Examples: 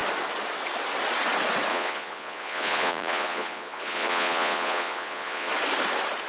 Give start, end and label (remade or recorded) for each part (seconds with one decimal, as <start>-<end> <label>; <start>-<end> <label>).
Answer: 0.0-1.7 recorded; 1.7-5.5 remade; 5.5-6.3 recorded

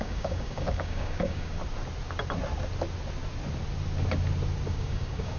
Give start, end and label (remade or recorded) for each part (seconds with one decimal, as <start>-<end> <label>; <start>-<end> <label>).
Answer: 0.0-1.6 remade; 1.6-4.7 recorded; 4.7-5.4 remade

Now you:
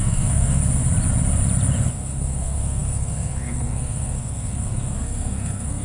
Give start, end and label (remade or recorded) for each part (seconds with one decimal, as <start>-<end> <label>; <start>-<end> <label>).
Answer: 0.0-0.6 remade; 0.6-1.9 recorded; 1.9-5.8 remade